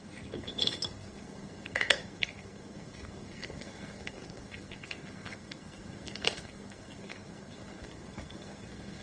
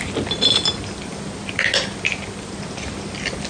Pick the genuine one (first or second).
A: second